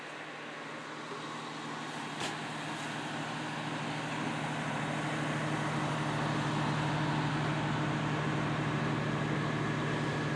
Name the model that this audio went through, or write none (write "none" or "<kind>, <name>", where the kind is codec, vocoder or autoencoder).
none